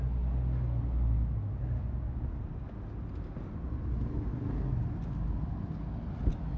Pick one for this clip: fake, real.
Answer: real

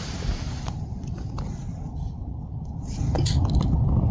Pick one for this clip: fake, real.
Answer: real